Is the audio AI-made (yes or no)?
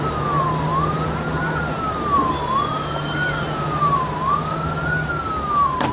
no